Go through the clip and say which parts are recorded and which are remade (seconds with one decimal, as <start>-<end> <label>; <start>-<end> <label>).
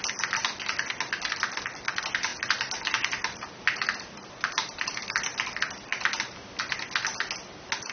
0.0-7.9 recorded